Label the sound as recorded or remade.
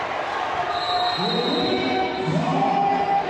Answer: recorded